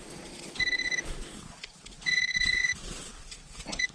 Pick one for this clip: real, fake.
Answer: fake